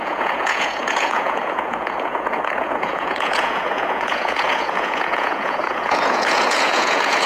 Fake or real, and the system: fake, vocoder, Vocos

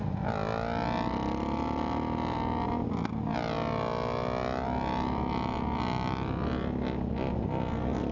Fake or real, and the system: real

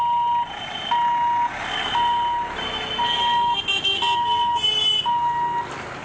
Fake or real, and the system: real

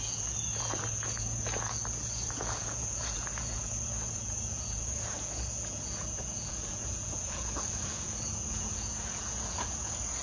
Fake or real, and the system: fake, vocoder, Vocos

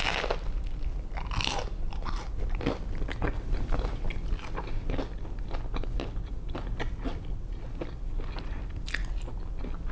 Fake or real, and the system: real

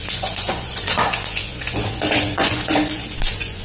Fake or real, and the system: fake, vocoder, Vocos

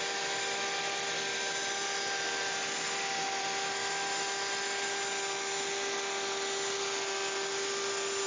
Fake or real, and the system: real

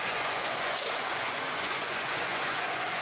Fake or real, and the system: fake, vocoder, Vocos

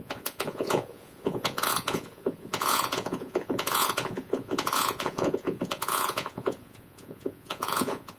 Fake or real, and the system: fake, vocoder, Vocos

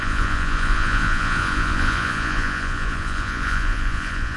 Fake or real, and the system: fake, vocoder, Vocos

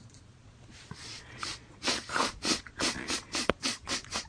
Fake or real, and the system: fake, vocoder, Vocos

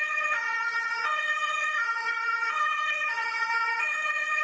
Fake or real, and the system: fake, vocoder, Vocos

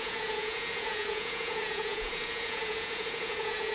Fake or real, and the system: fake, vocoder, Vocos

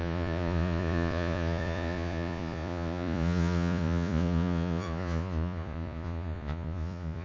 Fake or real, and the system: fake, vocoder, Vocos